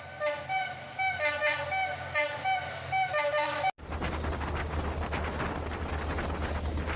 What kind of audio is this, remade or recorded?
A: recorded